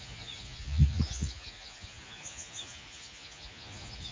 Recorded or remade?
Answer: remade